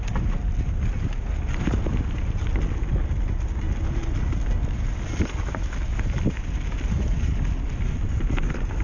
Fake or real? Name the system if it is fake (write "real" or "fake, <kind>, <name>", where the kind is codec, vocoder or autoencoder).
real